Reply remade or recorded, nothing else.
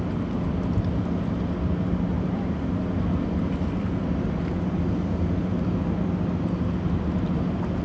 recorded